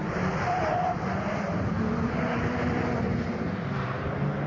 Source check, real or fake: real